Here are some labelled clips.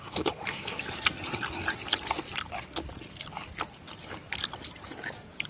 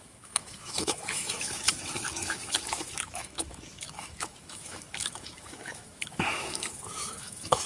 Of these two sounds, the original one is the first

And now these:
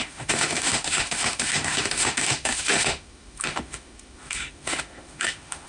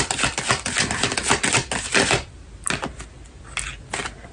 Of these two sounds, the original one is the second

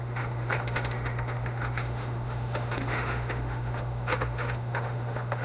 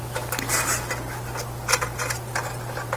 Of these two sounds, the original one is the second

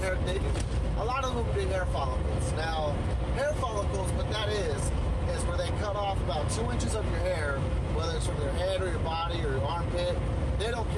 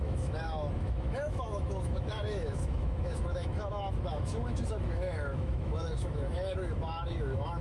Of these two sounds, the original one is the first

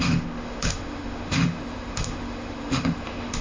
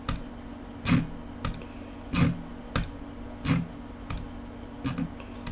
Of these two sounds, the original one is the second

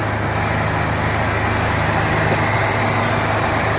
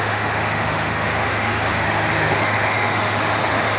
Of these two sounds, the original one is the first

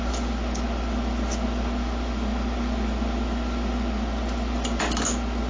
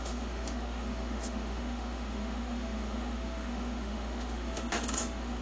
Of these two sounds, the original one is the first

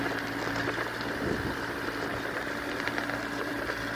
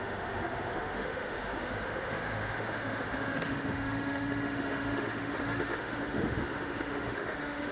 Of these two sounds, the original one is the first